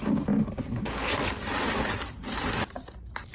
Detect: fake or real real